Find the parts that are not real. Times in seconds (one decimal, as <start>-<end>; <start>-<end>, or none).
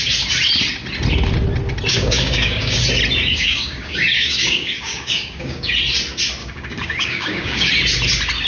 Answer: 1.9-2.8; 3.3-5.7; 6.4-7.7